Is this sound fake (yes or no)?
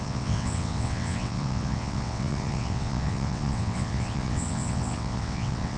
yes